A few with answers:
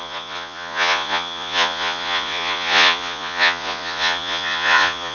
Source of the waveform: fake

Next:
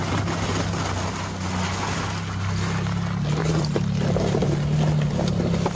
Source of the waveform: real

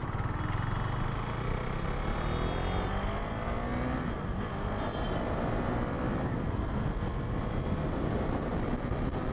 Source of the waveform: real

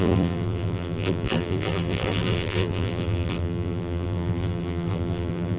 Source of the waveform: fake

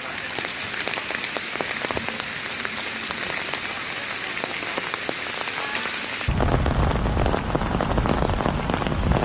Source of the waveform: real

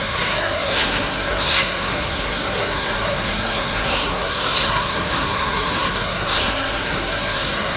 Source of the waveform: fake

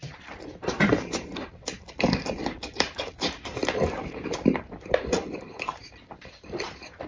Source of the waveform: fake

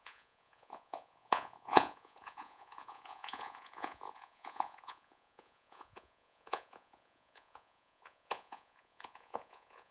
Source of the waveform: fake